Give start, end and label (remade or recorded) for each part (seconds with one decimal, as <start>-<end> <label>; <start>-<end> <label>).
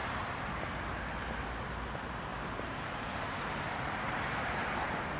0.0-0.6 remade; 0.6-2.3 recorded; 2.3-5.2 remade